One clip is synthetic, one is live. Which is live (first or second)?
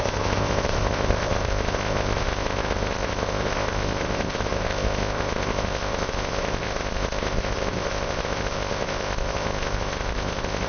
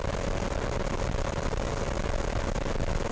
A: second